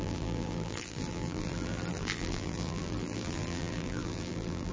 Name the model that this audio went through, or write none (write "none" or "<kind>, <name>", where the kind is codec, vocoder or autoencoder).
vocoder, BigVGAN v2